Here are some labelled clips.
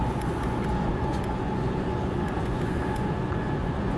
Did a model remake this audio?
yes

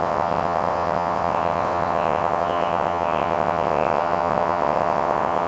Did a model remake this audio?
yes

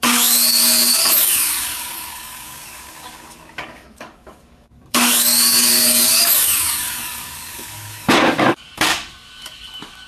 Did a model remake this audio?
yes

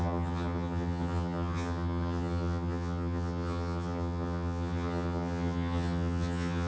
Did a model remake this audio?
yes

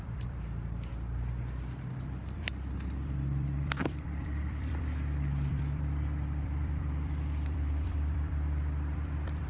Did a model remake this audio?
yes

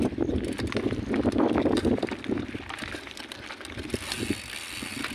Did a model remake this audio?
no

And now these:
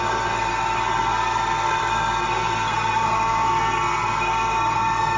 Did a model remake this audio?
yes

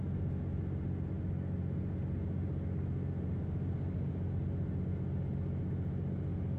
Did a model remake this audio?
no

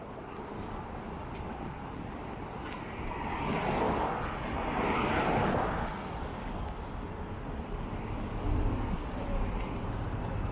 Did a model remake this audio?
no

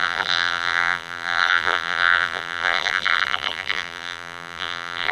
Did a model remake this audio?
yes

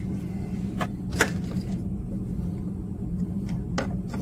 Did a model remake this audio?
no